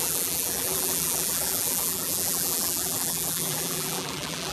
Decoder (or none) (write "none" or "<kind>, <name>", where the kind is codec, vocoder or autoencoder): vocoder, BigVGAN v2